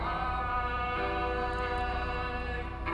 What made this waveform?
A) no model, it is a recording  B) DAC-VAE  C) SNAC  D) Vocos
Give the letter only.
A